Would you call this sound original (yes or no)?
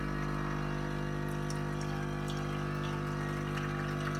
yes